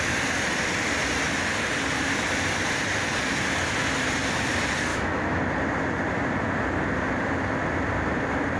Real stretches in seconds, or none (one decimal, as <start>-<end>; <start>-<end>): 0.0-4.9; 5.4-8.6